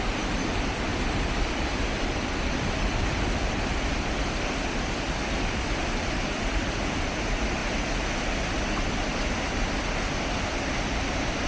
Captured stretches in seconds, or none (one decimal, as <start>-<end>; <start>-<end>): 0.9-1.5; 7.6-9.4